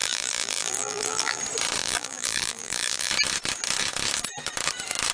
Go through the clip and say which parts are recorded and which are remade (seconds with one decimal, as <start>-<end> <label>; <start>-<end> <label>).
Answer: 0.0-1.4 remade; 1.4-1.8 recorded; 1.8-3.1 remade; 3.1-5.1 recorded